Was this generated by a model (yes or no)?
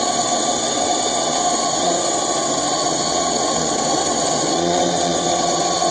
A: yes